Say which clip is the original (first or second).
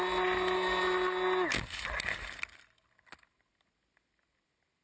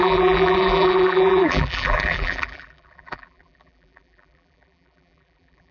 first